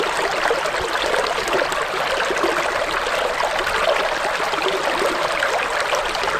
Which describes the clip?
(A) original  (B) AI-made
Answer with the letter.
A